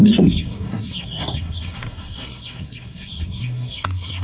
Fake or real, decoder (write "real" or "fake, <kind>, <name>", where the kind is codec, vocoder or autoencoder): fake, codec, SNAC